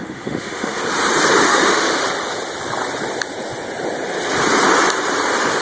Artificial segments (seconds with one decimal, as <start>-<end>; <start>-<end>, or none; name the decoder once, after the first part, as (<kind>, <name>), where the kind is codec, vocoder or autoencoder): 0.0-0.8 (autoencoder, DAC-VAE); 1.4-2.0